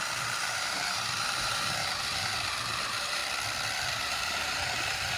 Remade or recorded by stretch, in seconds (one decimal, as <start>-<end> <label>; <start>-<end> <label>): 0.0-3.2 remade; 3.2-3.8 recorded; 3.8-5.2 remade